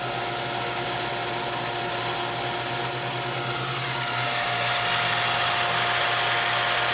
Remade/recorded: recorded